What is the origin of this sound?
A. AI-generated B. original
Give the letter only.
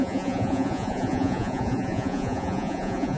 A